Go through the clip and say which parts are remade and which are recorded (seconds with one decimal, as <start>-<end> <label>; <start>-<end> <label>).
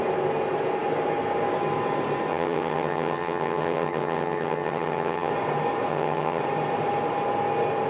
0.0-2.3 recorded; 2.3-5.3 remade; 5.3-5.9 recorded; 5.9-6.4 remade; 6.4-7.9 recorded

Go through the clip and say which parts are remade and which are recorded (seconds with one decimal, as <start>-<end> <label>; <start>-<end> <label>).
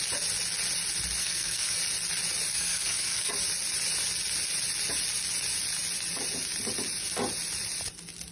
0.0-1.2 recorded; 1.2-1.8 remade; 1.8-2.5 recorded; 2.5-3.3 remade; 3.3-8.3 recorded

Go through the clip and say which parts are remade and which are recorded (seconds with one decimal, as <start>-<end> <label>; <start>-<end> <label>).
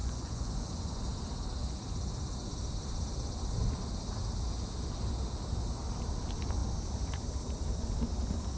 0.0-1.0 remade; 1.0-8.6 recorded